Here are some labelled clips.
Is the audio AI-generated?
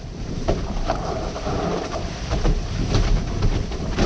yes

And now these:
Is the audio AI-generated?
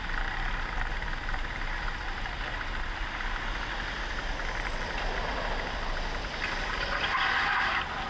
no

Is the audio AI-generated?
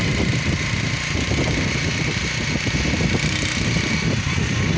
no